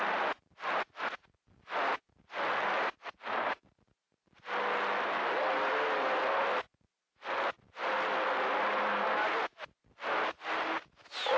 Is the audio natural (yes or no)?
yes